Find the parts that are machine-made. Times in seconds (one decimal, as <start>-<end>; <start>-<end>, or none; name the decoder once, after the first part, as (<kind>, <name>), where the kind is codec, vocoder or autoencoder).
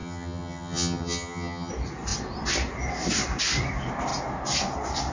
0.0-1.7 (vocoder, HiFi-GAN)